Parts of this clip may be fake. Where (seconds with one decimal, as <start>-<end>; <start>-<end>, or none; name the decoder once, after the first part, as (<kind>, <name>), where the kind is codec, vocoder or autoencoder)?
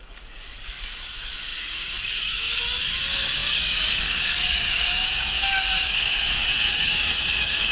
0.0-7.7 (codec, DAC)